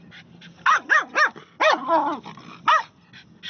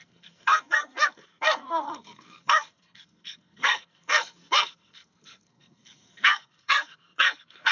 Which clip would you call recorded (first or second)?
first